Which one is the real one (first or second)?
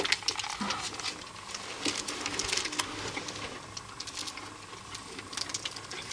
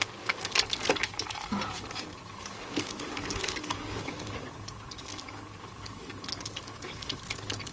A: first